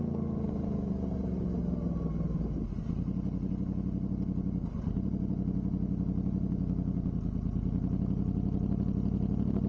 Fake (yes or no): no